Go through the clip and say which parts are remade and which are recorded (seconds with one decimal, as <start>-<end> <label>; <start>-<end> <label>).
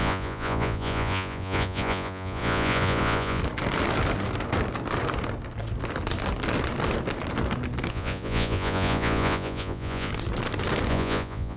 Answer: 0.0-3.4 remade; 3.4-7.9 recorded; 7.9-10.1 remade; 10.1-10.9 recorded; 10.9-11.6 remade